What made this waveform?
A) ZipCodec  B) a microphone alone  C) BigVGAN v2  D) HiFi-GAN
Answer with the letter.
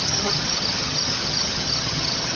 D